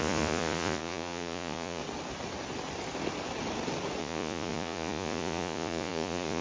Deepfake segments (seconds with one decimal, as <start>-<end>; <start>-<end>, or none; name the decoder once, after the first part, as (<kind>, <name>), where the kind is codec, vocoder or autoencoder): 0.0-1.8 (vocoder, Vocos); 4.0-6.4